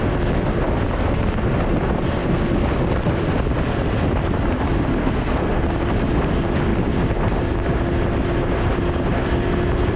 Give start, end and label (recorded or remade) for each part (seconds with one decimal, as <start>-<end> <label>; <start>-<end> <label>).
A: 0.0-5.0 recorded; 5.0-5.6 remade; 5.6-10.0 recorded